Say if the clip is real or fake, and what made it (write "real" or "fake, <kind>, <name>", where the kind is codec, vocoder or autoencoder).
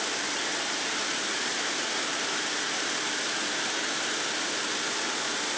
real